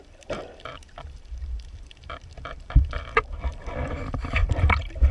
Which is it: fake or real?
fake